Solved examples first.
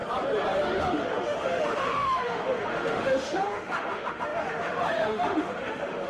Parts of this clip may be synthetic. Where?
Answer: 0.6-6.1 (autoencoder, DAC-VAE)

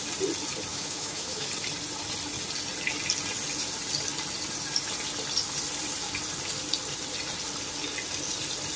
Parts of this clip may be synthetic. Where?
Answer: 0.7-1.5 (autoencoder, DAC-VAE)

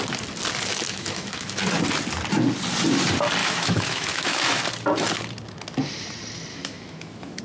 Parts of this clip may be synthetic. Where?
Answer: 0.7-1.6 (autoencoder, DAC-VAE); 3.4-4.6; 6.5-7.4

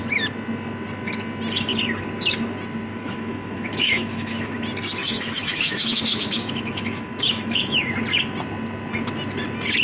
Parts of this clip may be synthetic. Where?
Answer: 2.9-4.6 (autoencoder, DAC-VAE); 5.0-7.8